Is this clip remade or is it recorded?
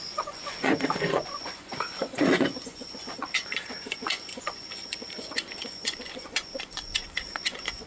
remade